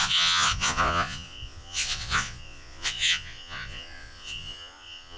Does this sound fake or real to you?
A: fake